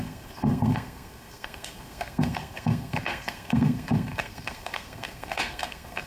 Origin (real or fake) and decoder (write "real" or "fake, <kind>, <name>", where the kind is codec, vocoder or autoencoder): fake, codec, SNAC